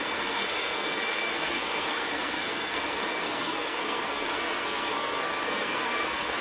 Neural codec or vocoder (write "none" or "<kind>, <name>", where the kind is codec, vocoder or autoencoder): codec, SNAC